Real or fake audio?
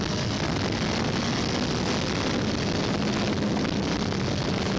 real